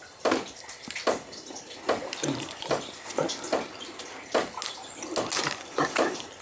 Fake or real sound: real